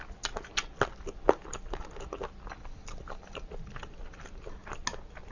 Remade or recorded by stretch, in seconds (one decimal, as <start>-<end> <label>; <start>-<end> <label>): 0.0-5.3 recorded